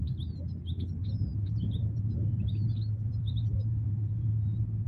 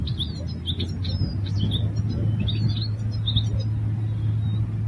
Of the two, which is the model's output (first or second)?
first